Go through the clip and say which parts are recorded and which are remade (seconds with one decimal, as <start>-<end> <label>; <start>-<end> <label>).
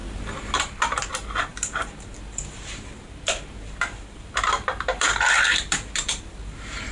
0.0-0.6 recorded; 0.6-6.9 remade